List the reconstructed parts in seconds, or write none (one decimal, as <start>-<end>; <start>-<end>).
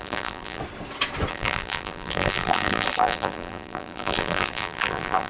0.0-0.6; 1.3-5.3